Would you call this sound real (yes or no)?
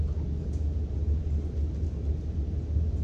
yes